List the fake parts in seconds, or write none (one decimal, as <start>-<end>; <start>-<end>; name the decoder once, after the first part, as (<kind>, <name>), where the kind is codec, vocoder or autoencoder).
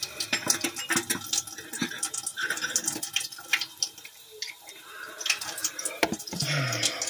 2.3-4.8 (vocoder, BigVGAN v2); 5.6-7.1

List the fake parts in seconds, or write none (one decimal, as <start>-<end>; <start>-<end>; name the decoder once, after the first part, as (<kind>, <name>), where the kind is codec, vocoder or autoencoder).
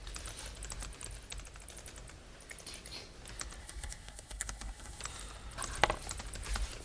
3.6-5.0 (codec, SNAC)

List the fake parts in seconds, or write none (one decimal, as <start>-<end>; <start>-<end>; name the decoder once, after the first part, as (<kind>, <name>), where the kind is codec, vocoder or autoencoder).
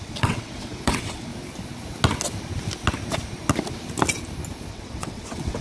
0.0-1.3 (vocoder, WaveNeXt); 4.7-5.6